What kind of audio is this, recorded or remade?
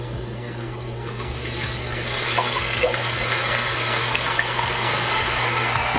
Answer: remade